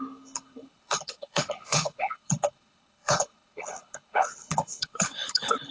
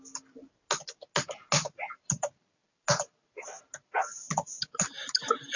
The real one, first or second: second